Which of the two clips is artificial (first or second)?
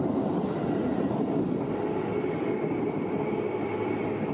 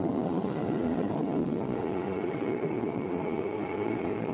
second